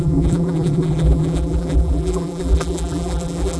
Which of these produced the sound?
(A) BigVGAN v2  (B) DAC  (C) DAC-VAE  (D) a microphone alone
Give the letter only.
A